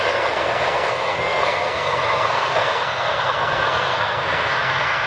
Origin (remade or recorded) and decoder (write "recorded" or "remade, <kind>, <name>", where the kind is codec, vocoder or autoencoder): remade, codec, SNAC